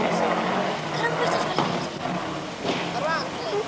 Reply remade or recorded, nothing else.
recorded